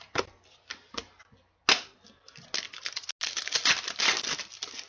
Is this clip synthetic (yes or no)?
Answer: no